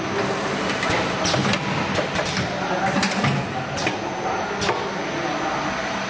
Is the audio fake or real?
real